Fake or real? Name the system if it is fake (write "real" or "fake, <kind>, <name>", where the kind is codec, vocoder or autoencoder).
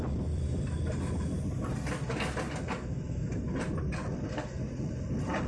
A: fake, vocoder, BigVGAN v2